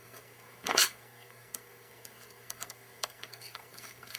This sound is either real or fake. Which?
fake